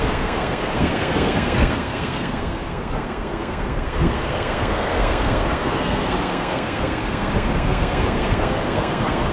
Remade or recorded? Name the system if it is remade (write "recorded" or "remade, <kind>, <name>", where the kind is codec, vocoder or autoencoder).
remade, codec, SNAC